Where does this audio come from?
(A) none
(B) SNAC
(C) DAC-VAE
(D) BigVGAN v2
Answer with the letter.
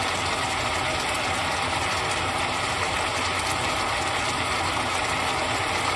A